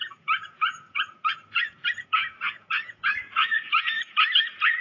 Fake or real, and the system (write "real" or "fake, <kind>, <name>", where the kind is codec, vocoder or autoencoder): fake, vocoder, Vocos